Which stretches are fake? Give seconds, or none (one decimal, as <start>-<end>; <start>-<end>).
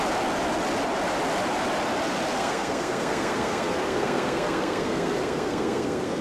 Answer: 2.4-6.2